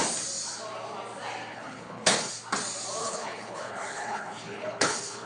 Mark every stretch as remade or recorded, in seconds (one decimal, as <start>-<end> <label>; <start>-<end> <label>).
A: 0.0-1.5 recorded; 1.5-2.3 remade; 2.3-3.0 recorded; 3.0-5.3 remade